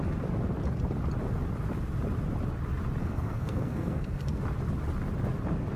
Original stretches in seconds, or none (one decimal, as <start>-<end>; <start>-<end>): 0.0-3.0; 4.4-5.8